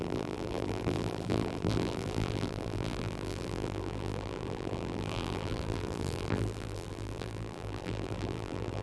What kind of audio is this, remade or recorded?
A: remade